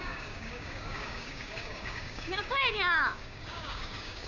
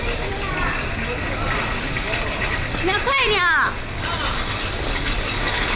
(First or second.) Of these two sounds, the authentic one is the second